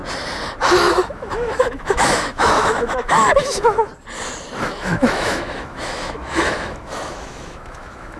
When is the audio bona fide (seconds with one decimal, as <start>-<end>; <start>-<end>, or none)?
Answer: 0.0-0.8; 3.9-4.6